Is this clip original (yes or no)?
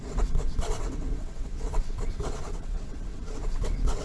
no